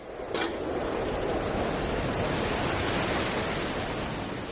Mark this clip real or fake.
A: real